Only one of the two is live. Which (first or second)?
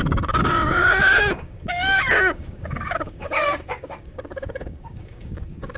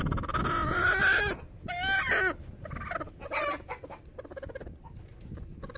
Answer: second